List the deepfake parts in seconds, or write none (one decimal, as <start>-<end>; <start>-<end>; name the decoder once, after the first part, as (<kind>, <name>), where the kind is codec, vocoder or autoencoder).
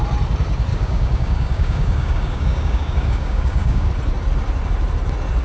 0.7-3.9 (codec, DAC)